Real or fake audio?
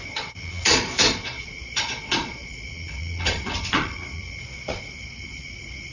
fake